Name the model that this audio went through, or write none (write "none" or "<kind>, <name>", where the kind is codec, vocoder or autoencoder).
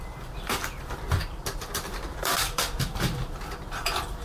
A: vocoder, BigVGAN v2